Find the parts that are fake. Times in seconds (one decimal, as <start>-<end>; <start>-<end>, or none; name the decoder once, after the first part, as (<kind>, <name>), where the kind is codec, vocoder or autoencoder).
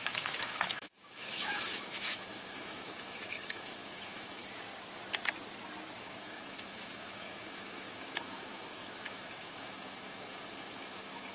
0.0-4.4 (autoencoder, DAC-VAE); 6.0-11.3